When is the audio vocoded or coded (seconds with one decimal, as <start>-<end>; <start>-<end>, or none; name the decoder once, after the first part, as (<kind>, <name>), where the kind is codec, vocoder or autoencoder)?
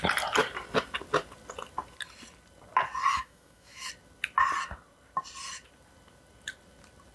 3.1-3.9 (autoencoder, DAC-VAE)